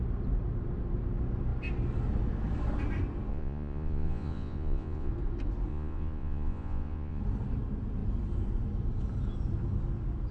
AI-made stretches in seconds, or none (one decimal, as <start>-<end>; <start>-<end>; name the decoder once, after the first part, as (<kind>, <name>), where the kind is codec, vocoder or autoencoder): 3.3-5.1 (vocoder, Vocos); 5.7-7.2